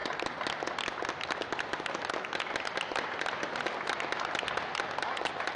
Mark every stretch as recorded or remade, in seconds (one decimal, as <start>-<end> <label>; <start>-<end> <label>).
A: 0.0-5.6 recorded

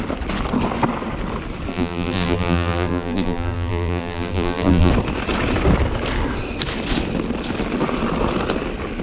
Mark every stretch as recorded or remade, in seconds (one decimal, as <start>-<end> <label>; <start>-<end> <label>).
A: 0.0-1.7 recorded; 1.7-4.9 remade; 4.9-9.0 recorded